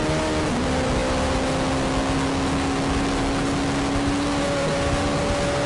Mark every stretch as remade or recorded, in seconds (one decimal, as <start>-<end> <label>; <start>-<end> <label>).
0.0-5.7 recorded